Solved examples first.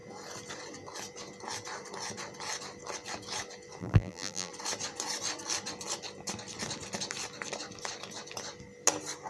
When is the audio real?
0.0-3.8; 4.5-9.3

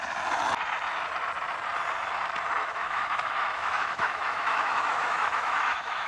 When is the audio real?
0.0-2.6